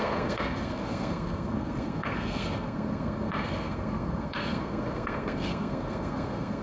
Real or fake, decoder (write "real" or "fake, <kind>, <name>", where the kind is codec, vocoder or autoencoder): fake, codec, SNAC